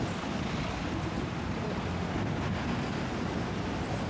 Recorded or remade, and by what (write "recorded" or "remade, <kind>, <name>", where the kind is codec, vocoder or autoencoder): recorded